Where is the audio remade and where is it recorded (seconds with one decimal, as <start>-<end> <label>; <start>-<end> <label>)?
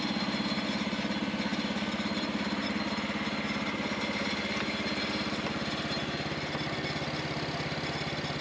0.0-8.4 recorded